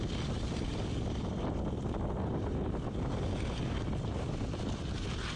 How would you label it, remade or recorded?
remade